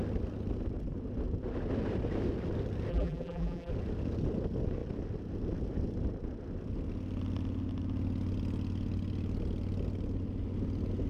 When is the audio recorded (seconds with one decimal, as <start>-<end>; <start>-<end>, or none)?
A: 0.0-2.9; 3.7-11.1